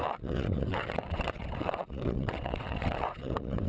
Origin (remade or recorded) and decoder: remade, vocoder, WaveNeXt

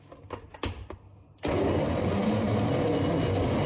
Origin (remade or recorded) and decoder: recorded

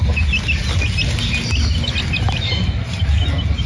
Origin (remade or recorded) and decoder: recorded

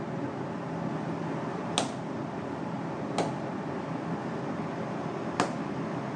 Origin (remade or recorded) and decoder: recorded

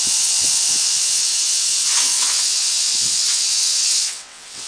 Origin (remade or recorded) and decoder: remade, vocoder, WaveNeXt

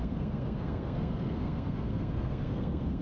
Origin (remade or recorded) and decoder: remade, codec, SNAC